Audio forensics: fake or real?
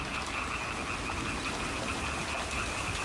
real